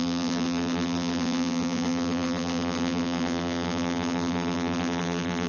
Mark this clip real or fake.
fake